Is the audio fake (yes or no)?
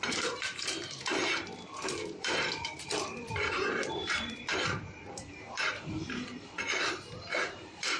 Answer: yes